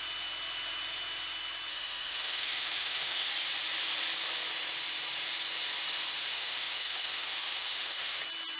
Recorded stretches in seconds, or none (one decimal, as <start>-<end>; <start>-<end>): 0.0-1.7; 3.3-6.3; 8.2-8.6